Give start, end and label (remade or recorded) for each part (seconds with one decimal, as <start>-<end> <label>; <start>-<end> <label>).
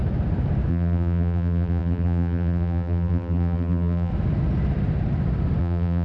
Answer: 0.0-0.7 recorded; 0.7-4.1 remade; 4.1-5.6 recorded; 5.6-6.0 remade